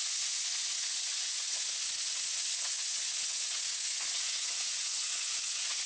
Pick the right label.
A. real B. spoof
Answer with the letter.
B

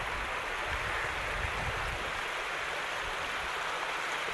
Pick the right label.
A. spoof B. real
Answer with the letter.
B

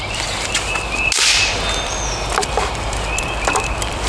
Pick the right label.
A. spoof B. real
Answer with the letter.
B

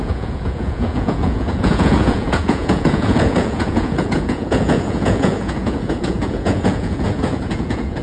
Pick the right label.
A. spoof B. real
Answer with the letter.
A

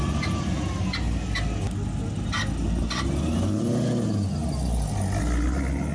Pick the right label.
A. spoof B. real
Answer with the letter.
B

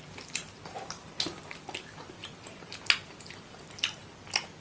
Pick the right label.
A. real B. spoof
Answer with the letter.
A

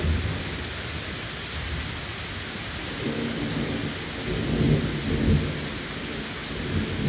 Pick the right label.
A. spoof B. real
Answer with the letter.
B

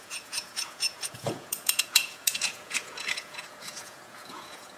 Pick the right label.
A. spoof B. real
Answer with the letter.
A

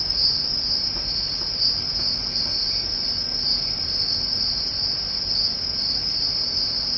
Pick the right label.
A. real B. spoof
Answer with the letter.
A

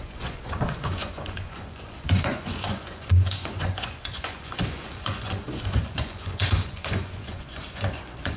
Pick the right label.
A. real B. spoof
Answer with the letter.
B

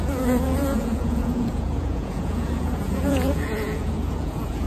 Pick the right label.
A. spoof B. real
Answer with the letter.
A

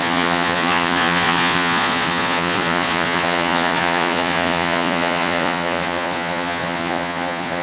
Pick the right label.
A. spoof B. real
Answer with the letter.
A